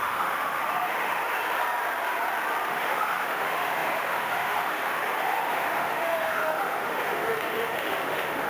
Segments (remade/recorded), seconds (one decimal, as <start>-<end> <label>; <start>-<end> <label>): 0.0-1.2 remade; 1.2-2.7 recorded; 2.7-8.5 remade